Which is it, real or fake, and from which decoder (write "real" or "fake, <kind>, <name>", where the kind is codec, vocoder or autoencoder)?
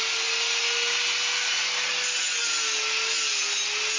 real